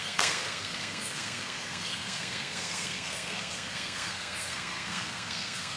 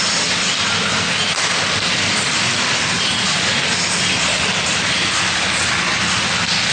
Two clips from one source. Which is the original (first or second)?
second